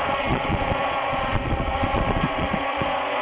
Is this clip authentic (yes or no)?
no